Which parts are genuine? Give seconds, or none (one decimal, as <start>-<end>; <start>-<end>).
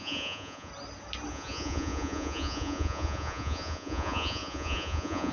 0.7-1.3